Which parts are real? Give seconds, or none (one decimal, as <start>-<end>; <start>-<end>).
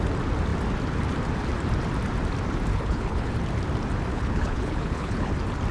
0.0-2.7; 3.3-4.1; 5.3-5.7